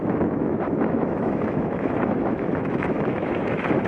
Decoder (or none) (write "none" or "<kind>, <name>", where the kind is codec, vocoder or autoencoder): autoencoder, DAC-VAE